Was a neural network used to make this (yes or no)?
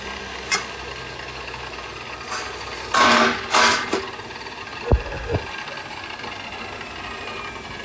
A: no